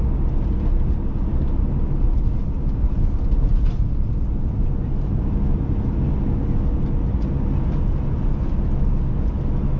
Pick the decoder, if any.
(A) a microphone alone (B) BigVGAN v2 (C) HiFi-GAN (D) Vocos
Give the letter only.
A